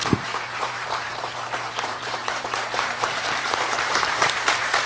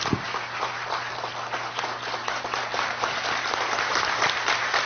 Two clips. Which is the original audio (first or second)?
second